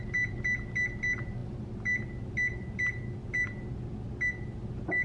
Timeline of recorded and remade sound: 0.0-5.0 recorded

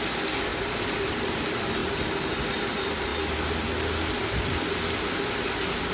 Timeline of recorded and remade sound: 0.0-5.9 recorded

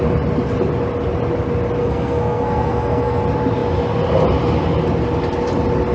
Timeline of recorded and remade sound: 0.0-1.8 recorded; 1.8-3.2 remade; 3.2-5.9 recorded